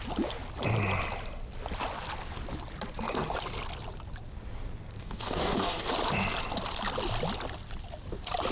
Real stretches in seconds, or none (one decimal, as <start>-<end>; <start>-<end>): 0.0-5.0; 5.9-8.5